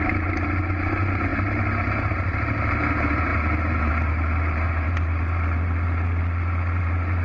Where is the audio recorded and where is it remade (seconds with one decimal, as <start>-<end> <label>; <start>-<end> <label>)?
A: 0.0-6.2 remade; 6.2-6.8 recorded; 6.8-7.2 remade